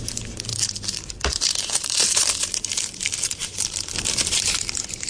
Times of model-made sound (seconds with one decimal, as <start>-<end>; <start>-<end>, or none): 0.5-2.7; 3.4-4.6